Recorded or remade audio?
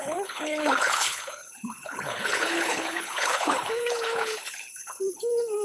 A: remade